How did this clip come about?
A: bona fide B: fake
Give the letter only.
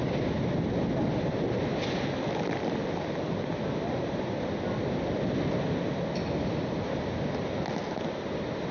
A